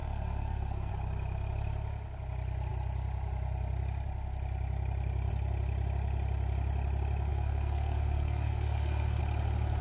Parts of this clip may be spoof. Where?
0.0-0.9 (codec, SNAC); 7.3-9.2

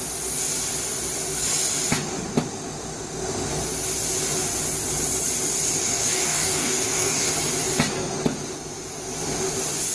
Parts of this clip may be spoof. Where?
6.0-7.3 (codec, DAC)

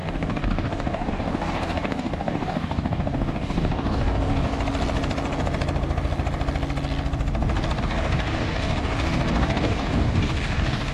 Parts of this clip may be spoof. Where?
0.0-4.5 (codec, DAC); 7.8-10.9

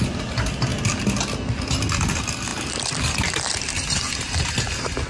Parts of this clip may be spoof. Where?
none

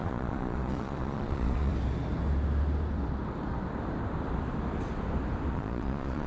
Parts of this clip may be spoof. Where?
0.0-1.7 (vocoder, Vocos); 5.5-6.3